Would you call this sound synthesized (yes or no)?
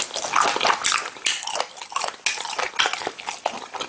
no